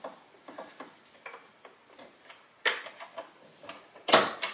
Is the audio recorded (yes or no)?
yes